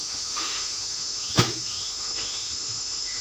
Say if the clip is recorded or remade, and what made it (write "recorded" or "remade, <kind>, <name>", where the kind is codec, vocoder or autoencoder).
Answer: remade, autoencoder, DAC-VAE